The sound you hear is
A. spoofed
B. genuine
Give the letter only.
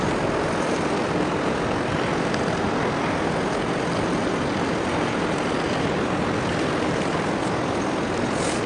B